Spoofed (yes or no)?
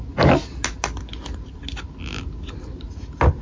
no